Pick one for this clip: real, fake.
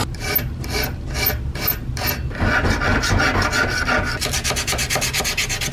real